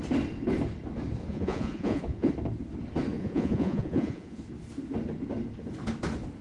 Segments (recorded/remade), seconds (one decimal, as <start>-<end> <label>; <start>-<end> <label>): 0.0-1.2 recorded; 1.2-2.3 remade; 2.3-3.2 recorded; 3.2-4.4 remade; 4.4-6.4 recorded